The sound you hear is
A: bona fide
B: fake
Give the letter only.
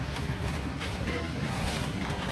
B